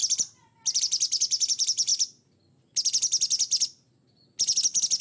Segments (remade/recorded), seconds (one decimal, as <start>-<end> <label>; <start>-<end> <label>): 0.0-5.0 recorded